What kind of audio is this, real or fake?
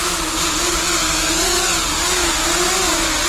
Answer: real